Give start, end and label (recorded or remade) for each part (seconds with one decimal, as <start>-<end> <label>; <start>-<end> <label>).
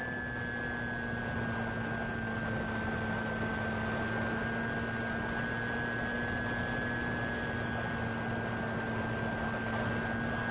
0.0-10.5 recorded